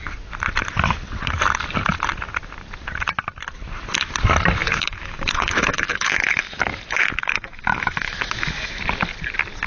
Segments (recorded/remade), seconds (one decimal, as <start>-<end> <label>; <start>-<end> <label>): 0.0-4.6 recorded; 4.6-8.8 remade; 8.8-9.7 recorded

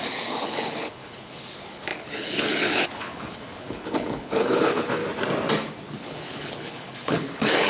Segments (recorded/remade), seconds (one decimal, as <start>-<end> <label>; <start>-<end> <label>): 0.0-5.0 remade; 5.0-6.0 recorded; 6.0-7.7 remade

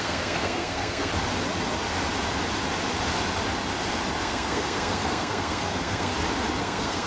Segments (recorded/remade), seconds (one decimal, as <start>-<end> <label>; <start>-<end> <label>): 0.0-1.1 remade; 1.1-4.2 recorded; 4.2-6.1 remade; 6.1-6.6 recorded; 6.6-7.1 remade